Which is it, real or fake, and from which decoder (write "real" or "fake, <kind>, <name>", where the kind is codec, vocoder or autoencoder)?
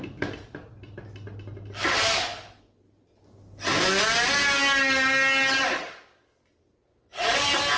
real